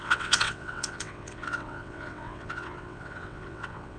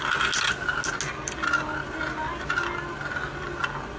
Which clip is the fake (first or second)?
first